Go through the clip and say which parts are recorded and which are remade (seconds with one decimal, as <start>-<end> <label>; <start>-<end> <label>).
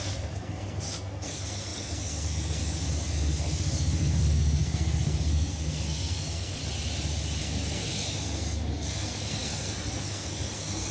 0.0-6.6 remade; 6.6-7.4 recorded; 7.4-10.9 remade